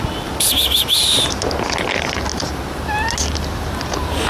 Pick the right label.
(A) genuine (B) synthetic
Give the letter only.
A